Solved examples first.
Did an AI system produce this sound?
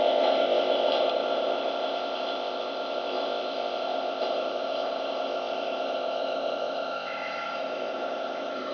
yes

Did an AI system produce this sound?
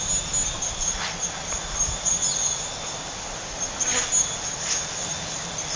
no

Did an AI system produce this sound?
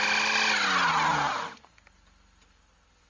no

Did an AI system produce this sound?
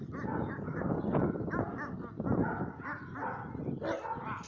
no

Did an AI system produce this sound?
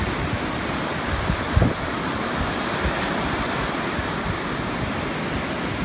no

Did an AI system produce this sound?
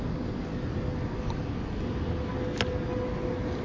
no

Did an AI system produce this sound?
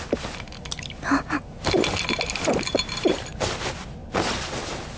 no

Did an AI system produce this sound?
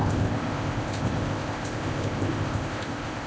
yes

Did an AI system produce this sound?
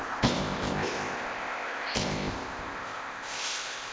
yes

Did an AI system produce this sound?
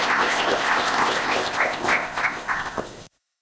yes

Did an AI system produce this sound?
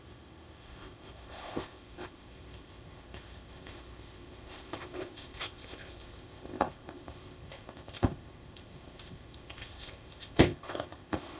yes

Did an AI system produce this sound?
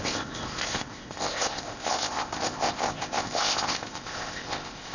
yes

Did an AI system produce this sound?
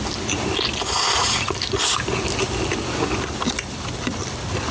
no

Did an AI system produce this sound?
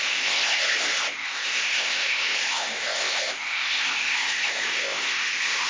yes